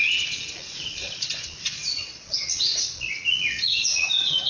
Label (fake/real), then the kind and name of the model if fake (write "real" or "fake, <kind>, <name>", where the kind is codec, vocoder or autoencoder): fake, vocoder, Vocos